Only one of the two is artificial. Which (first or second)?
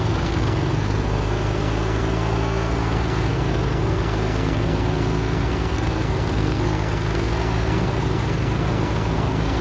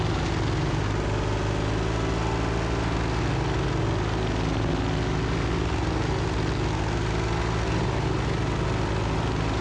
first